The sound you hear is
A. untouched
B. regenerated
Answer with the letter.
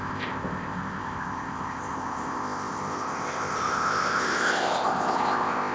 B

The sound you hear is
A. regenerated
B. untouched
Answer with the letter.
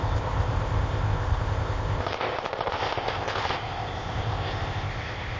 A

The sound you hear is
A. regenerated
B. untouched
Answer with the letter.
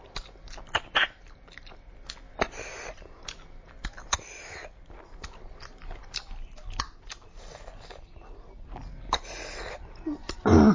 B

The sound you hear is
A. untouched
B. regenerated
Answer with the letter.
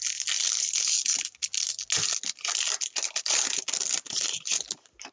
A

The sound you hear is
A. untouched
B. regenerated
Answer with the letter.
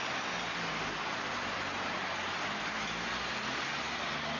A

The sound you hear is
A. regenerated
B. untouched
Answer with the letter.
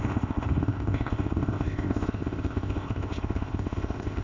A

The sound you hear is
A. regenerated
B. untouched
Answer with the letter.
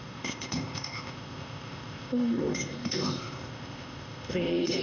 A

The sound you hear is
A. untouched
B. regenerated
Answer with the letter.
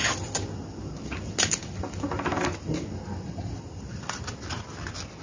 A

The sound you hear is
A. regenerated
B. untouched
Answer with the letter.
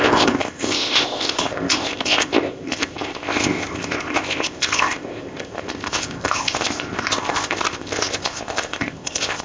A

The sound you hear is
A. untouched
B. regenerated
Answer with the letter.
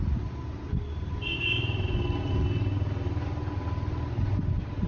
A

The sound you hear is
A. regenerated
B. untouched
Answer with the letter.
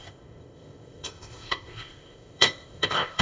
A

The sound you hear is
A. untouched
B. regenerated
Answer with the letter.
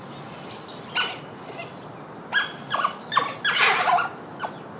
A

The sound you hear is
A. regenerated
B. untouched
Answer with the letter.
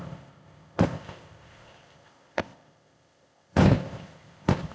A